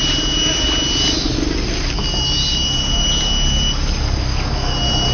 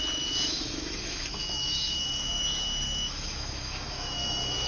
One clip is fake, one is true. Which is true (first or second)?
first